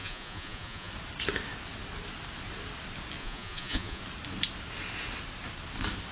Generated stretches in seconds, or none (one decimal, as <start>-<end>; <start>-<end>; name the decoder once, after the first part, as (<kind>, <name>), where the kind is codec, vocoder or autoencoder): 0.0-0.9 (vocoder, Vocos); 3.2-4.0